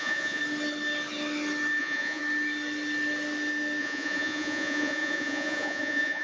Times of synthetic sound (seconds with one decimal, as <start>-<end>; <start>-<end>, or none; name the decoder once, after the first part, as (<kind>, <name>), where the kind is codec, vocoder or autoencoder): 0.0-0.4 (vocoder, Vocos); 1.8-2.2; 3.8-6.2